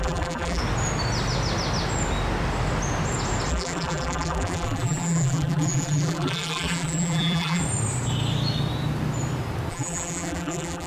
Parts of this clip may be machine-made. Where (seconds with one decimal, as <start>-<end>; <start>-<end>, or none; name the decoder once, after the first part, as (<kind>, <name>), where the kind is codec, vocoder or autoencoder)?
0.0-0.6 (vocoder, BigVGAN v2); 3.5-7.6; 9.7-10.9

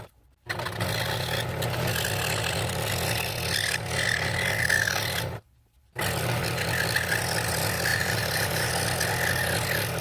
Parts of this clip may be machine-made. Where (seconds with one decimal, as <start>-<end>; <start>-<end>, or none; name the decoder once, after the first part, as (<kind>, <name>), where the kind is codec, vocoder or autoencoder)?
7.9-8.7 (vocoder, BigVGAN v2)

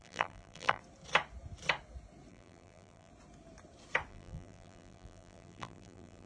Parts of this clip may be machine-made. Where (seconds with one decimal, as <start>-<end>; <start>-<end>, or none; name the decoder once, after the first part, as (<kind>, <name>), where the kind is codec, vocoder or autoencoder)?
0.0-0.8 (vocoder, BigVGAN v2); 2.3-3.1; 4.1-6.3

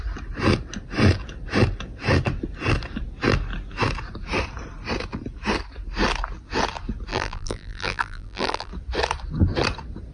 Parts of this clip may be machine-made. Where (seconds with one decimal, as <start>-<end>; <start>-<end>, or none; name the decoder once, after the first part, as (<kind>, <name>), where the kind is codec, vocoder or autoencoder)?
7.1-8.7 (vocoder, BigVGAN v2)

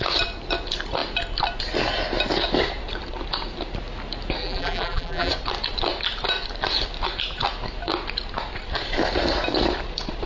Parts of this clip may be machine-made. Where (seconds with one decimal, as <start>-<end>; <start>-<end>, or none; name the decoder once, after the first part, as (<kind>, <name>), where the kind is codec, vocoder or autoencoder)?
4.4-5.3 (vocoder, BigVGAN v2)